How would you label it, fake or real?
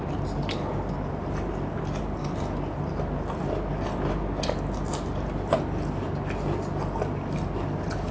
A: real